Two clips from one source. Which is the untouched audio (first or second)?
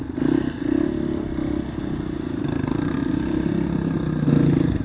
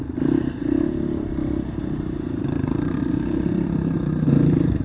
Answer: first